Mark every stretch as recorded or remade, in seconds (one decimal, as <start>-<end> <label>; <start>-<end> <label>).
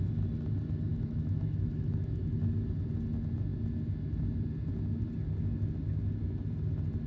0.0-0.9 recorded; 0.9-2.4 remade; 2.4-7.1 recorded